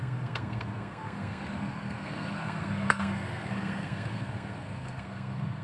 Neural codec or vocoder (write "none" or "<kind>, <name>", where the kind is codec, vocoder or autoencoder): codec, SNAC